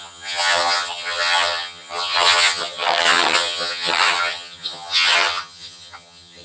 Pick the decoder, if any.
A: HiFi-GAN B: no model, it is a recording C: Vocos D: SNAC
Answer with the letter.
A